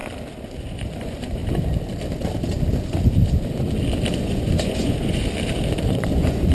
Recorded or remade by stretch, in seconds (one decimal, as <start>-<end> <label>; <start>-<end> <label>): 0.0-0.6 recorded; 0.6-1.4 remade; 1.4-4.2 recorded; 4.2-5.2 remade; 5.2-5.8 recorded; 5.8-6.5 remade